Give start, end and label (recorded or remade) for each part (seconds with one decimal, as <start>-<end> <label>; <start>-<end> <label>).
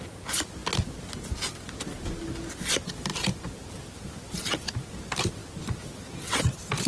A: 0.0-6.9 recorded